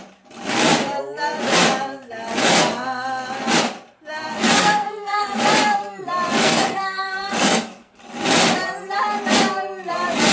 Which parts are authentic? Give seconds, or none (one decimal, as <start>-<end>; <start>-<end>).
0.0-4.6; 5.4-6.4; 8.0-10.3